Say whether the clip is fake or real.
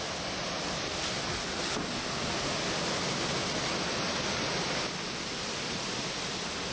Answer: real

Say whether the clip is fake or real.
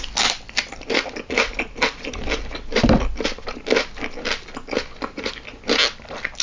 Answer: real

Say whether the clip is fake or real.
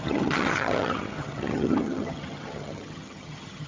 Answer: fake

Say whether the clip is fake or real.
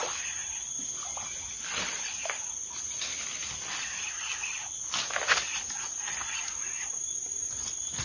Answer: real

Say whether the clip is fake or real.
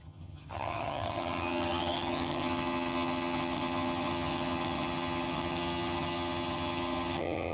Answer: fake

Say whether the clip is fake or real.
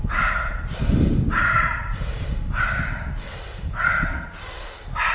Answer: real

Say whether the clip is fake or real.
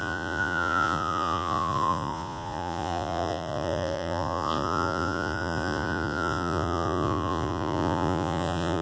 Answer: fake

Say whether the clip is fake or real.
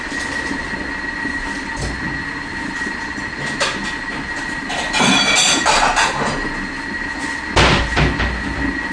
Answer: real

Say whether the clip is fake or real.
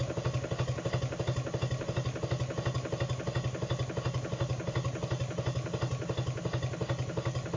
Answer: real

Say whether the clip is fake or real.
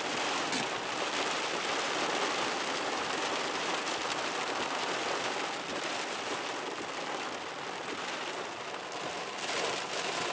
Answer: fake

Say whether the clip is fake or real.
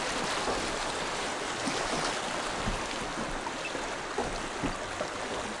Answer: real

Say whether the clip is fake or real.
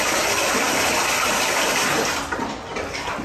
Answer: real